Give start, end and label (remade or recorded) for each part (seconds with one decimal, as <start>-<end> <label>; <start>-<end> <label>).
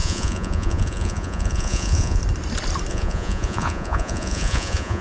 0.0-2.2 remade; 2.2-2.9 recorded; 2.9-5.0 remade